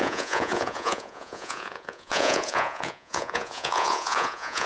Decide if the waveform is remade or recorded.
remade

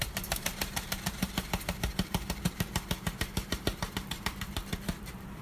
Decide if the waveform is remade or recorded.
remade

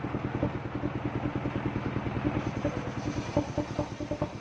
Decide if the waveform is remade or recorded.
recorded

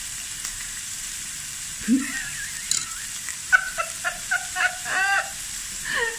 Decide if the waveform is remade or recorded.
remade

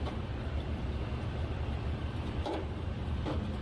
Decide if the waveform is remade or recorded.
remade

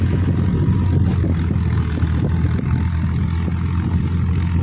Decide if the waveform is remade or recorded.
recorded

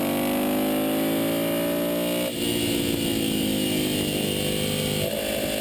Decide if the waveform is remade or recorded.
recorded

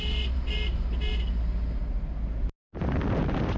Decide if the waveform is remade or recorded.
recorded